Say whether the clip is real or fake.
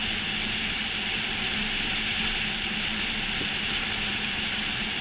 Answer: real